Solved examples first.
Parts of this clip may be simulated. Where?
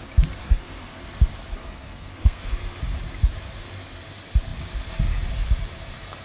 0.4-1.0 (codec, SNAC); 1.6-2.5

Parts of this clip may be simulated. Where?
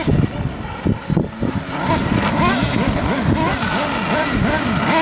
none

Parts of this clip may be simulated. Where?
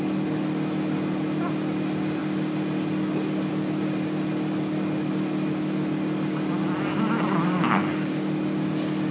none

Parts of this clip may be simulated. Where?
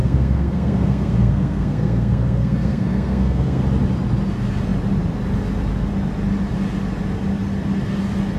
0.0-3.6 (codec, SNAC)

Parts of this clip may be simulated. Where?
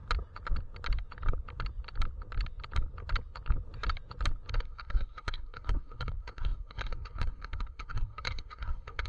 4.5-9.1 (codec, SNAC)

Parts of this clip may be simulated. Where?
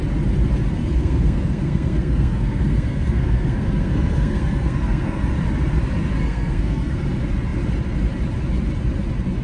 0.8-5.3 (codec, SNAC); 6.1-7.0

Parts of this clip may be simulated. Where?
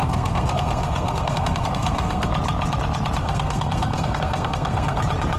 0.0-2.3 (codec, SNAC); 3.2-5.0